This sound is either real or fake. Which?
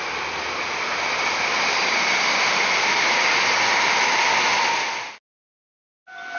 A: real